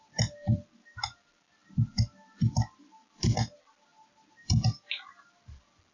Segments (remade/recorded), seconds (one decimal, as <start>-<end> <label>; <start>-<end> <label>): 0.0-5.9 recorded